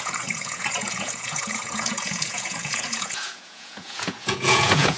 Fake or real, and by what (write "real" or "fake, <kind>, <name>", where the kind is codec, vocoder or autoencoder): fake, vocoder, Vocos